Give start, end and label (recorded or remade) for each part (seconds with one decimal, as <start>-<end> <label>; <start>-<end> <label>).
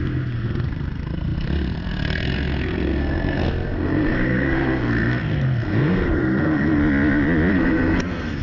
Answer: 0.0-6.8 remade; 6.8-7.5 recorded; 7.5-8.4 remade